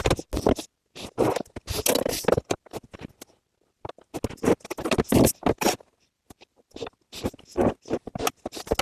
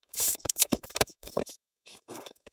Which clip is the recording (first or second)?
first